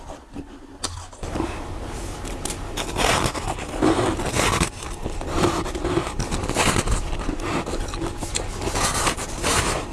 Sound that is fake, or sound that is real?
real